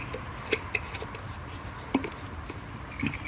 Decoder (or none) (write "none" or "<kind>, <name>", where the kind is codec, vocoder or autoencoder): none